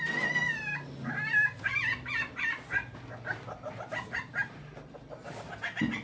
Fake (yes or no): no